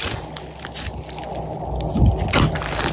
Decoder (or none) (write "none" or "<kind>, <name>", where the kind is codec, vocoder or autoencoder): none